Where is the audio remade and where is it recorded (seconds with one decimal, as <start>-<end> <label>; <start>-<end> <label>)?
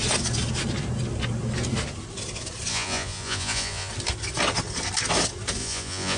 0.0-2.7 recorded; 2.7-3.9 remade; 3.9-5.6 recorded; 5.6-6.2 remade